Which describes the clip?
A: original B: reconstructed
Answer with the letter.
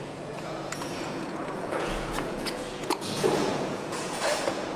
B